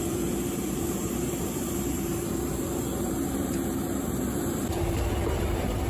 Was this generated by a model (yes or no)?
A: yes